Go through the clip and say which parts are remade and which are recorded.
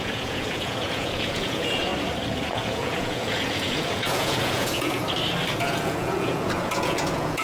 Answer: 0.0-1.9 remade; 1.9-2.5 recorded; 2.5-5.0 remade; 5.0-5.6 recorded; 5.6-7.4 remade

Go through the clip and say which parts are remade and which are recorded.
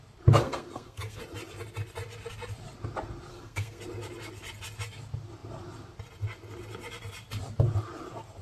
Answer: 0.0-0.4 recorded; 0.4-1.2 remade; 1.2-3.3 recorded; 3.3-3.8 remade; 3.8-8.4 recorded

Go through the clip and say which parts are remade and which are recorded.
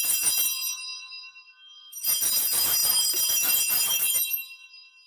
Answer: 0.0-5.1 remade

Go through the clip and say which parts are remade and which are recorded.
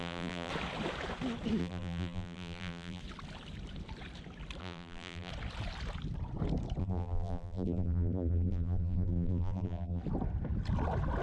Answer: 0.0-0.5 remade; 0.5-1.6 recorded; 1.6-3.0 remade; 3.0-4.6 recorded; 4.6-5.3 remade; 5.3-6.8 recorded; 6.8-10.0 remade; 10.0-11.2 recorded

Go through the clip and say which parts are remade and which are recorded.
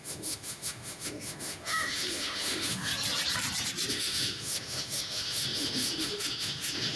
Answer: 0.0-2.9 remade; 2.9-3.9 recorded; 3.9-7.0 remade